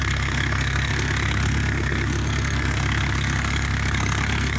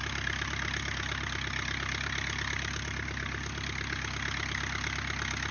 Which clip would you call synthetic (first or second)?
first